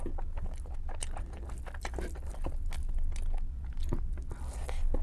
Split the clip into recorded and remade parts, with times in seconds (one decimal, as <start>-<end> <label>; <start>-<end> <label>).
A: 0.0-5.0 recorded